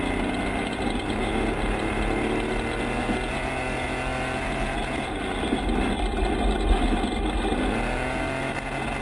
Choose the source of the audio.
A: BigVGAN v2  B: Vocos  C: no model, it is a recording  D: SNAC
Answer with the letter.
C